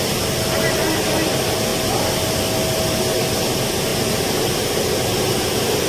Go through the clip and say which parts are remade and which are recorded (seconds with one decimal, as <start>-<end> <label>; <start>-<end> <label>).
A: 0.0-5.9 recorded

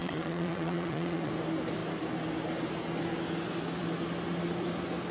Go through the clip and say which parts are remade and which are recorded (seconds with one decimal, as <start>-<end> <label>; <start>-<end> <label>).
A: 0.0-1.3 remade; 1.3-5.1 recorded

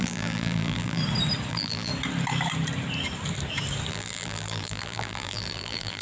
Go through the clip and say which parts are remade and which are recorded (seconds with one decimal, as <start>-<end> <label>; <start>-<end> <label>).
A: 0.0-1.0 remade; 1.0-1.5 recorded; 1.5-1.9 remade; 1.9-3.9 recorded; 3.9-6.0 remade

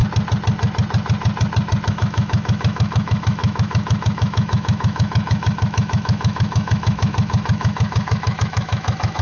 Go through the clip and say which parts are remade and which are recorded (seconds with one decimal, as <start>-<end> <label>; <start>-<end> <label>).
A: 0.0-1.9 recorded; 1.9-9.2 remade

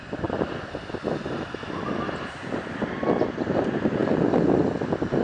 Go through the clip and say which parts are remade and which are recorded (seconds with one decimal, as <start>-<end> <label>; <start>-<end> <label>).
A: 0.0-5.2 remade

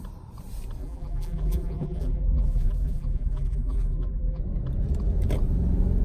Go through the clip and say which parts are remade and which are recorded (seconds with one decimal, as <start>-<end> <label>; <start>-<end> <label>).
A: 0.0-0.8 recorded; 0.8-4.4 remade; 4.4-6.0 recorded

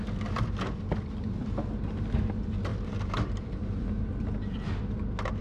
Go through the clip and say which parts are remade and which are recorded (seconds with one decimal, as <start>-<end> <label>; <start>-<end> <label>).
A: 0.0-2.7 recorded; 2.7-4.8 remade; 4.8-5.4 recorded